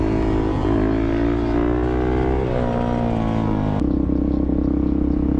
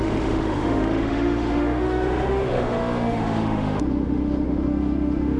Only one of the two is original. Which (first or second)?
first